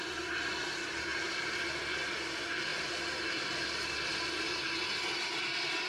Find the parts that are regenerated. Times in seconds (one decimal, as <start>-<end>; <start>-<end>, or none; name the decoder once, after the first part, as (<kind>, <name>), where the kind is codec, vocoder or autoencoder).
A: 2.7-4.1 (vocoder, BigVGAN v2)